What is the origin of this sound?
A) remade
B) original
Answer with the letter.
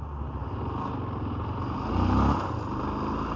B